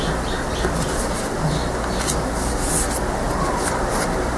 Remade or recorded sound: recorded